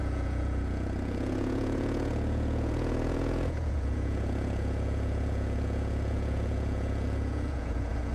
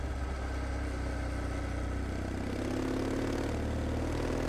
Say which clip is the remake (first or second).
first